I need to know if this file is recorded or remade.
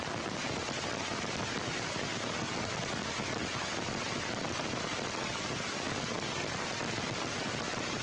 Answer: recorded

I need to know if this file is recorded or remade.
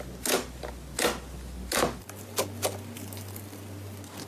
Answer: recorded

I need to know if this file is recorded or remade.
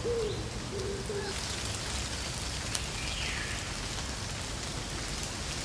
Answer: recorded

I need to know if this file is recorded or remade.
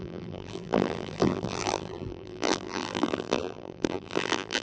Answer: remade